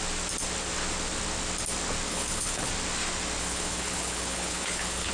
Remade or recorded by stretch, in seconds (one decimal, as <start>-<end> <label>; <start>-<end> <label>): 0.0-2.1 recorded; 2.1-2.7 remade; 2.7-3.4 recorded; 3.4-5.1 remade